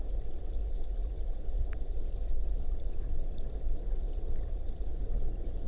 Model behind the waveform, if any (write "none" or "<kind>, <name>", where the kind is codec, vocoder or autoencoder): none